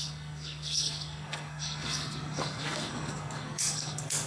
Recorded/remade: remade